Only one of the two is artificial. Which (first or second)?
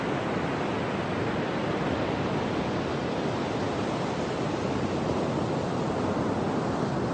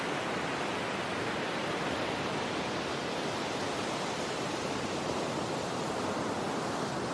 second